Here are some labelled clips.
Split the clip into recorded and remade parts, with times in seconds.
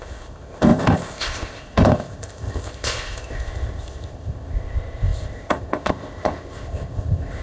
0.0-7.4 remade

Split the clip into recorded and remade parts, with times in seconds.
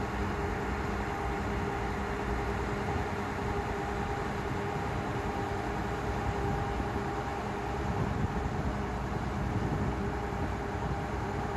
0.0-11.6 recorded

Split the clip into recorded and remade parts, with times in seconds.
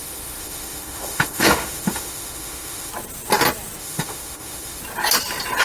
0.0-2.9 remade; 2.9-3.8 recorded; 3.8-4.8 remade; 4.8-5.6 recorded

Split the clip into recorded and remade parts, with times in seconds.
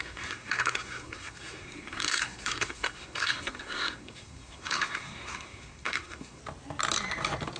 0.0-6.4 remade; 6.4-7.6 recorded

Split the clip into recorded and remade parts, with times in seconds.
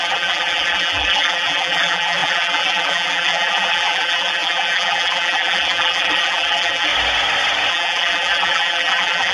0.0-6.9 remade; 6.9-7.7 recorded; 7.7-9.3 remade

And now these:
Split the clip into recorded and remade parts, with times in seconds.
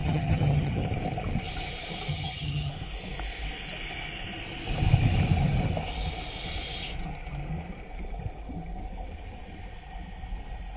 0.0-0.8 remade; 0.8-2.1 recorded; 2.1-2.7 remade; 2.7-10.8 recorded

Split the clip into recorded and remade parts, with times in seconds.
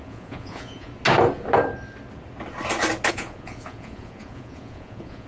0.0-0.9 remade; 0.9-3.1 recorded; 3.1-5.3 remade